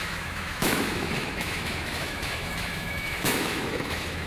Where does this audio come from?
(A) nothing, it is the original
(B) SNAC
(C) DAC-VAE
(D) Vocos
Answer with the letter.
C